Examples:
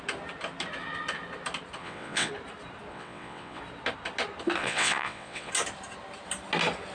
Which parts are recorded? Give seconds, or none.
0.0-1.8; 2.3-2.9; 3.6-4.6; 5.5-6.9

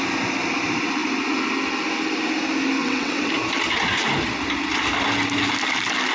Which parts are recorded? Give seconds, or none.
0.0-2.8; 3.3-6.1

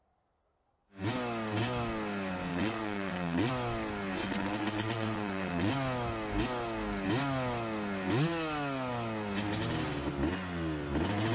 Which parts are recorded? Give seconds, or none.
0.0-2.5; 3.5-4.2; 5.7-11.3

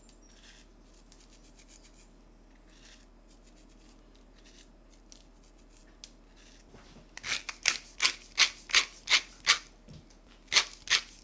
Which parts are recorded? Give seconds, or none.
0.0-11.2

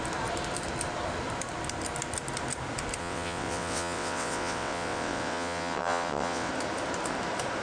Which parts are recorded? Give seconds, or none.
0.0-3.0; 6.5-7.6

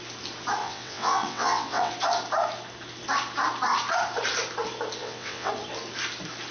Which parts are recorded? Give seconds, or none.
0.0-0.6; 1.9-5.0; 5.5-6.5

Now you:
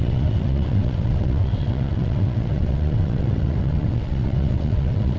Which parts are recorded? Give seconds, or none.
none

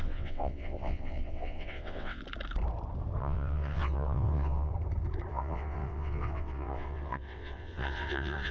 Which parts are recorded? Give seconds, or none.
2.2-3.2; 4.7-5.3